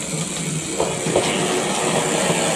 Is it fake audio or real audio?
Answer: real